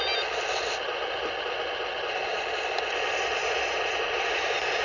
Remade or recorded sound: recorded